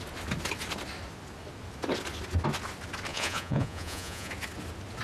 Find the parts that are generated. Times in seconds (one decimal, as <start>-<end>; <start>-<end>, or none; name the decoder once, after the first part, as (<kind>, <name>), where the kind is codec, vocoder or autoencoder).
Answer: 3.1-4.3 (vocoder, Vocos)